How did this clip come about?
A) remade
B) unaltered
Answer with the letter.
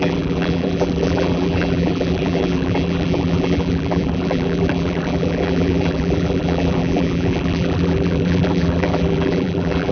A